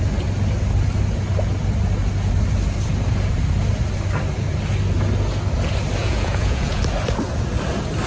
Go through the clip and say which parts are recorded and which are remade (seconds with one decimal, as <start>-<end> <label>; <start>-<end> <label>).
0.0-6.0 recorded; 6.0-6.8 remade; 6.8-8.1 recorded

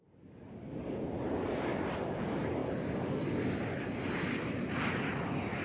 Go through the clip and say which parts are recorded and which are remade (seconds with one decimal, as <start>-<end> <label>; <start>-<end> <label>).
0.0-5.6 recorded

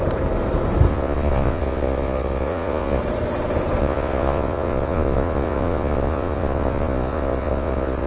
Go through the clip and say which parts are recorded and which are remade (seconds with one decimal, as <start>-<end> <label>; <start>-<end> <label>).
0.0-0.9 recorded; 0.9-3.0 remade; 3.0-3.8 recorded; 3.8-8.1 remade

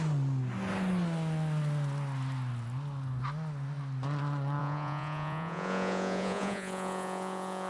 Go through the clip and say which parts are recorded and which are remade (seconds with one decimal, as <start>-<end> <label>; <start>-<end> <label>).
0.0-4.6 recorded; 4.6-7.7 remade

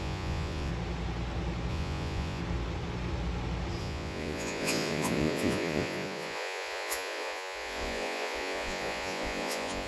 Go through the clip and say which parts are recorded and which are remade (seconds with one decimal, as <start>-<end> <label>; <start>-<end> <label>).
0.0-0.7 remade; 0.7-1.7 recorded; 1.7-2.4 remade; 2.4-3.8 recorded; 3.8-9.9 remade

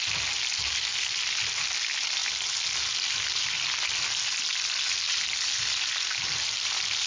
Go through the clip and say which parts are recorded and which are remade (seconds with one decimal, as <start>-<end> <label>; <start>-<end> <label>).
0.0-7.1 recorded

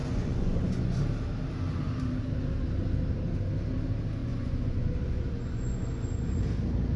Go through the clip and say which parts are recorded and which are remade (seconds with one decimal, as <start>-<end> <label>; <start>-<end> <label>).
0.0-1.0 remade; 1.0-4.2 recorded; 4.2-6.4 remade; 6.4-7.0 recorded

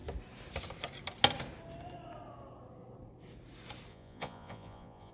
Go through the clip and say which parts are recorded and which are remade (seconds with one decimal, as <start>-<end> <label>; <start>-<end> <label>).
0.0-3.9 recorded; 3.9-5.1 remade